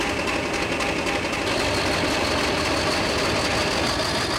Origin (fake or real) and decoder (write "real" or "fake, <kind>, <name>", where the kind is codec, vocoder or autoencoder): real